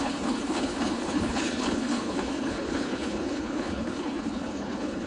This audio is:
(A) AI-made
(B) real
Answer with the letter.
A